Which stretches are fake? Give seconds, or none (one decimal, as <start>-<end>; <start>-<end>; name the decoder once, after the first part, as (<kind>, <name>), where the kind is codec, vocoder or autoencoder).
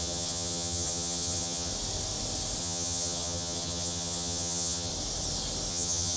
0.0-1.7 (vocoder, HiFi-GAN); 2.6-4.9; 5.7-6.2